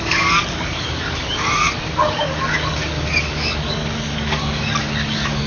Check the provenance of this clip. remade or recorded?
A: remade